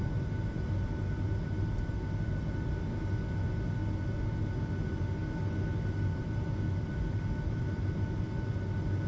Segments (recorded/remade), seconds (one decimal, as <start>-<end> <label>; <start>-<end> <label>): 0.0-9.1 recorded